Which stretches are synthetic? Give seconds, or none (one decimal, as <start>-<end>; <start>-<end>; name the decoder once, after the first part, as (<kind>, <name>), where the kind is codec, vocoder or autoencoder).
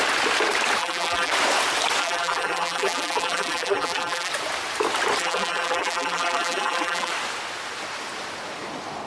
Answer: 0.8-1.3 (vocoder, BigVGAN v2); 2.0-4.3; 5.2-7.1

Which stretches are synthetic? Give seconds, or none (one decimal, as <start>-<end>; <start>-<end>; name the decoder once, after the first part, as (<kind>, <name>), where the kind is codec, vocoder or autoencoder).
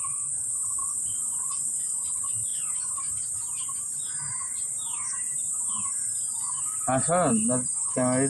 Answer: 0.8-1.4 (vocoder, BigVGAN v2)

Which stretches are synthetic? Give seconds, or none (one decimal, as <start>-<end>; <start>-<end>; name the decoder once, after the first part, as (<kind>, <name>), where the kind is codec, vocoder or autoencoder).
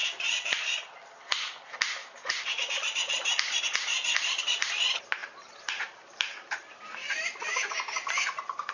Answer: 0.0-0.6 (vocoder, BigVGAN v2); 2.0-3.6; 5.2-8.7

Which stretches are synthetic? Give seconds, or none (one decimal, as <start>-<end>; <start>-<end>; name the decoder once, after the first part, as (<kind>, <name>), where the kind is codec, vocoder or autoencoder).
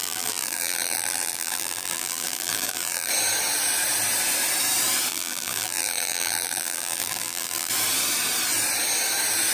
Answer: 0.0-3.1 (vocoder, BigVGAN v2); 5.1-7.7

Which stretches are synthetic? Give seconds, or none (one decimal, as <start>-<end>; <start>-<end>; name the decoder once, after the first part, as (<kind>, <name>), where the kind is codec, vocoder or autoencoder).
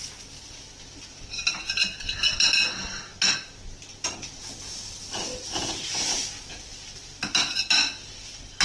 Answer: none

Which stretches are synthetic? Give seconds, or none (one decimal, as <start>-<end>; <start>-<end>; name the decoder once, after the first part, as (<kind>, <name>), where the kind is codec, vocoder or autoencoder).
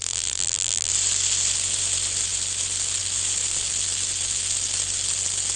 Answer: 0.0-0.9 (vocoder, BigVGAN v2)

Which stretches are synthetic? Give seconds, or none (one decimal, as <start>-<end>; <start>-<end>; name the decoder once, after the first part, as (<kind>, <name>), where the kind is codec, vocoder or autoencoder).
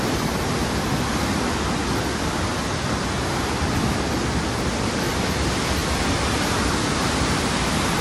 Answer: none